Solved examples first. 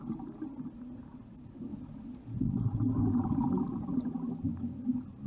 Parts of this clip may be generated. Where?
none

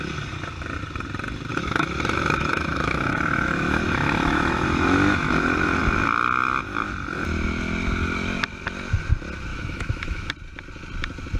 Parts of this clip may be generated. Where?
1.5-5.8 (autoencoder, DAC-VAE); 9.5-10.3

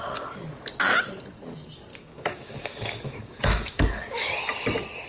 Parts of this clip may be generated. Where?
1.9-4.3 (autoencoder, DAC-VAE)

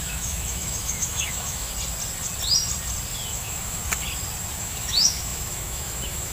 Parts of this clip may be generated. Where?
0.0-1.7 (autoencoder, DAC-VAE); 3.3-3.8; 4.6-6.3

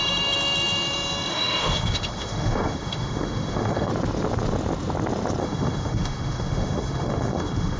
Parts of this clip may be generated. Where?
1.3-3.9 (autoencoder, DAC-VAE); 5.4-7.8

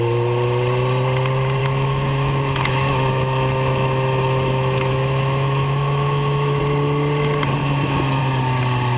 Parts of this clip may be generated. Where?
1.6-6.6 (autoencoder, DAC-VAE); 7.6-8.2

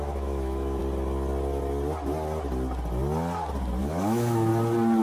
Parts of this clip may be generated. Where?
0.0-0.8 (autoencoder, DAC-VAE); 3.8-4.5

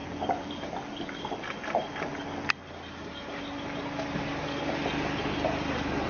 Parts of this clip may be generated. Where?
none